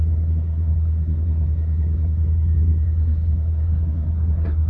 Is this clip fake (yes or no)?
yes